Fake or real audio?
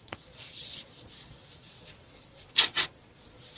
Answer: fake